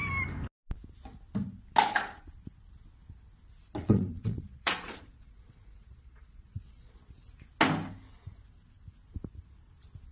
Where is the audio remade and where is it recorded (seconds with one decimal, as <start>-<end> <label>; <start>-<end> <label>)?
0.0-3.8 recorded; 3.8-7.0 remade; 7.0-10.1 recorded